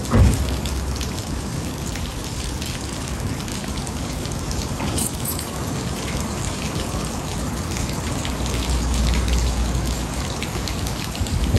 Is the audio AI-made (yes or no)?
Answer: yes